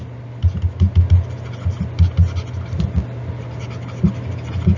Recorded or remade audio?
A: recorded